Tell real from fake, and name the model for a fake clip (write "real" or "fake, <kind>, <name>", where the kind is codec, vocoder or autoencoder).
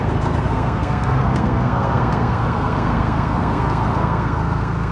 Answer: fake, codec, SNAC